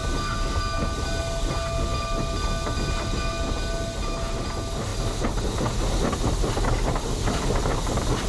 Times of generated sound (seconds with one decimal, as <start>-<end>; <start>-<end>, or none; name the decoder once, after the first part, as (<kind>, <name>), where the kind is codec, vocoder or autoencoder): none